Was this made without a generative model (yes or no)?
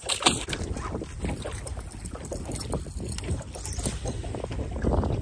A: yes